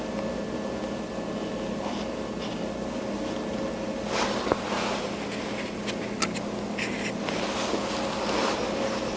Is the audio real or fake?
real